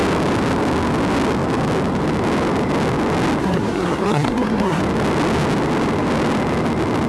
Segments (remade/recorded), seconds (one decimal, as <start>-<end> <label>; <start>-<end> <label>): 0.0-3.4 recorded; 3.4-4.8 remade; 4.8-7.1 recorded